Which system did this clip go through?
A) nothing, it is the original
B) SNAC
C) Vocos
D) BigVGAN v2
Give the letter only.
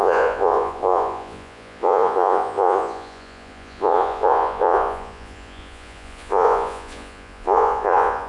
C